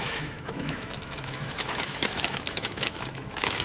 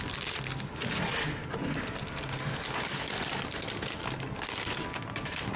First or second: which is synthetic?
first